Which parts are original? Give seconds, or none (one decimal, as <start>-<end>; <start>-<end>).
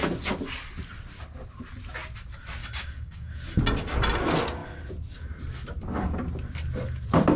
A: 0.0-2.6; 3.3-7.4